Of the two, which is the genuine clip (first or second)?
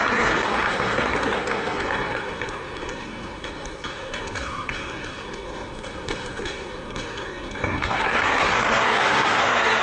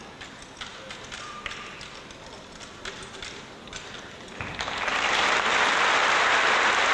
second